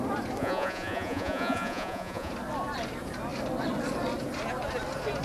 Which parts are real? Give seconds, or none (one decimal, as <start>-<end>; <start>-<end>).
0.0-0.4; 2.3-5.2